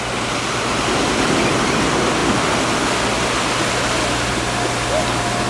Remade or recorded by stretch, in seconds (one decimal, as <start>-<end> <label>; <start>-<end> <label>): 0.0-5.5 recorded